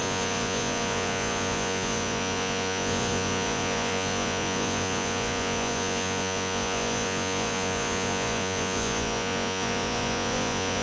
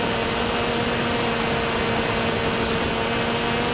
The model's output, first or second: first